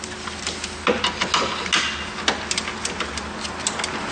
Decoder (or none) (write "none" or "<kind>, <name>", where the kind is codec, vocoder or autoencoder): none